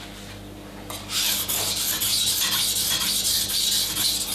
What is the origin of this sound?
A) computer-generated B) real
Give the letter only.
B